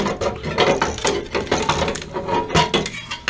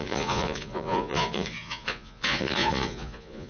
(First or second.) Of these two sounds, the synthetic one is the second